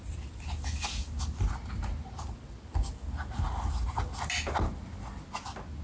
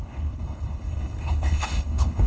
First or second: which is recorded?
first